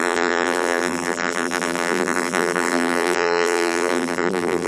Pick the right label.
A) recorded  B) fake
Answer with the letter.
B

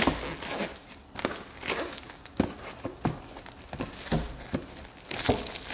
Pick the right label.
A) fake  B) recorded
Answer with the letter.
B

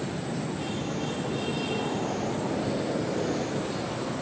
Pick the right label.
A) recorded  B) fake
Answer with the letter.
A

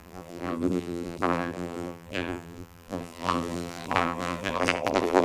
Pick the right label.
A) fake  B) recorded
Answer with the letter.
A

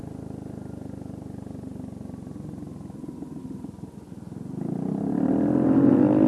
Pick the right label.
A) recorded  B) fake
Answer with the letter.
A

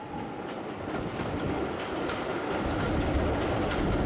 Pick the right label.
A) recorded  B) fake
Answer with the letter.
A